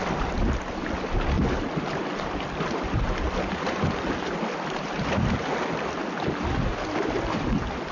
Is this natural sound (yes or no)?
yes